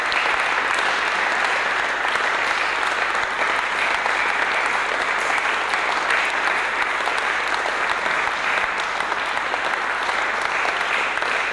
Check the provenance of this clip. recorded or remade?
recorded